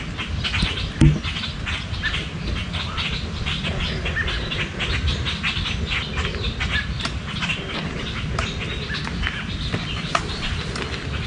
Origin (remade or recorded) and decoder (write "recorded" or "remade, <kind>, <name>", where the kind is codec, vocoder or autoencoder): recorded